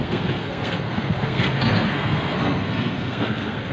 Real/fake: fake